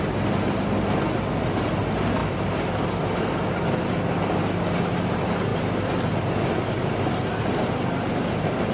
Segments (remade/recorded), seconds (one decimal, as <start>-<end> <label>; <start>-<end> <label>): 0.0-8.7 recorded